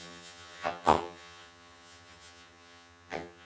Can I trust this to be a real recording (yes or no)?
no